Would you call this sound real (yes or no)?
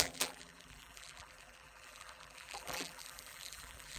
no